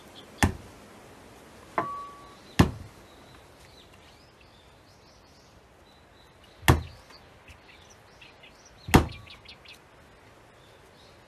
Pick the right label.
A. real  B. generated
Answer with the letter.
A